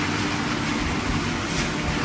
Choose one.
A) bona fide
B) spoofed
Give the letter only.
A